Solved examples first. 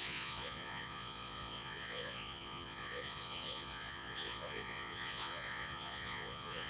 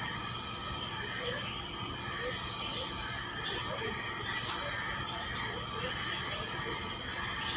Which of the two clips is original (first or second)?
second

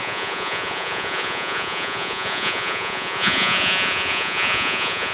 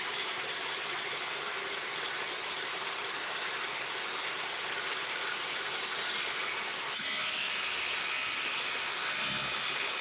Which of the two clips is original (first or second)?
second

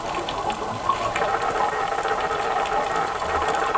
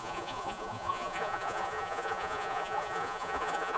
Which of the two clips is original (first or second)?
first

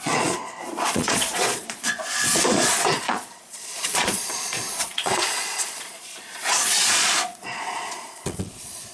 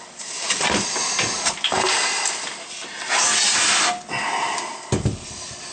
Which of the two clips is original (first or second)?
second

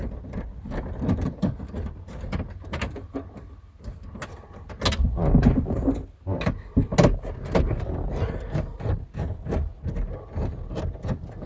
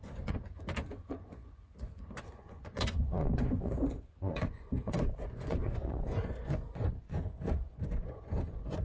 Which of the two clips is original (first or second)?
first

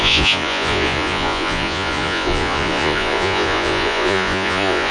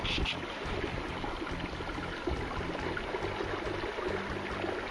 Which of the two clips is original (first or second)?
second